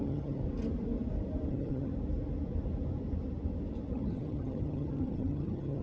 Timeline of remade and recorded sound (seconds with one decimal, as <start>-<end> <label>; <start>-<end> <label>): 0.0-0.4 remade; 0.4-1.5 recorded; 1.5-1.9 remade; 1.9-3.9 recorded; 3.9-5.8 remade